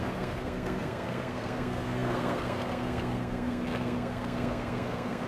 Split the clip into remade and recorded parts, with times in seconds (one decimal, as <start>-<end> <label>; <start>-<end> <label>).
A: 0.0-5.3 remade